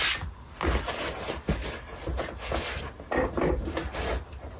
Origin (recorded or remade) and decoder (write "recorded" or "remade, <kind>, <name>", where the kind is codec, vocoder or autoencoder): recorded